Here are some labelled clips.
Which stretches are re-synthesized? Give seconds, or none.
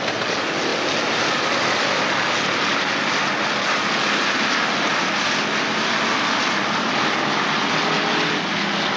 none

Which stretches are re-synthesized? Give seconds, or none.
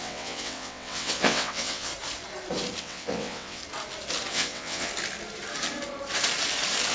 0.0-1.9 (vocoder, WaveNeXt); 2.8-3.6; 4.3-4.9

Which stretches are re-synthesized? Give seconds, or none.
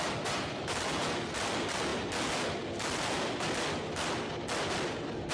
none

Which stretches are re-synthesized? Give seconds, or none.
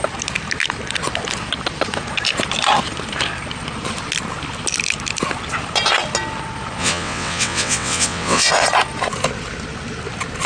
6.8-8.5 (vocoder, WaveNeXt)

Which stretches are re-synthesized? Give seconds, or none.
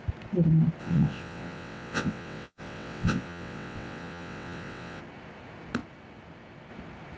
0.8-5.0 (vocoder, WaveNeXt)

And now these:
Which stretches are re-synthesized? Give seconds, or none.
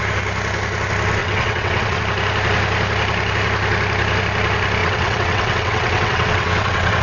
1.2-2.0 (vocoder, WaveNeXt); 4.8-7.0